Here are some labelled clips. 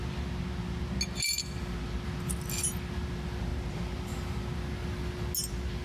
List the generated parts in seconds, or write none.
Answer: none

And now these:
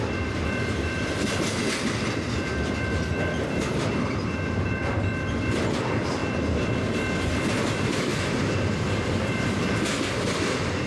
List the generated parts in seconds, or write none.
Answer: 0.0-6.2 (vocoder, BigVGAN v2); 6.9-10.9

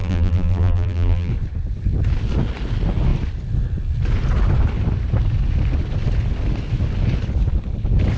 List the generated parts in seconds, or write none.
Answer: 0.0-1.3 (vocoder, BigVGAN v2)

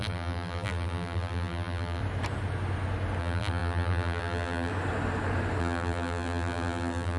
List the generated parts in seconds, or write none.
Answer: 0.0-2.0 (vocoder, BigVGAN v2); 3.2-4.7; 5.6-7.2

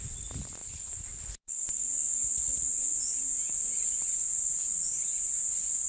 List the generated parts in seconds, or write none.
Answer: 0.6-1.2 (vocoder, BigVGAN v2)